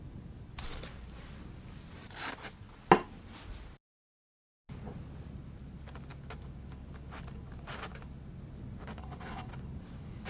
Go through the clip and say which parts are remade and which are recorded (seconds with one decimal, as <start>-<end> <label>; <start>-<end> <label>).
0.0-9.0 recorded; 9.0-9.5 remade; 9.5-10.3 recorded